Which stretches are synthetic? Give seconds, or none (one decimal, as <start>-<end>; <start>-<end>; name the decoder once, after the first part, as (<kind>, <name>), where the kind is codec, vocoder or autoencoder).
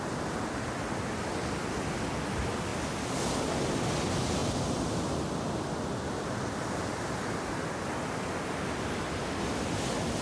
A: none